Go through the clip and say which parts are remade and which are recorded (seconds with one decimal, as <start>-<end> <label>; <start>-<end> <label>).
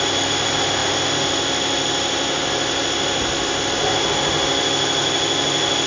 0.0-5.9 recorded